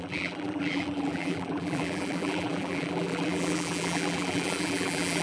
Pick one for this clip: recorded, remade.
remade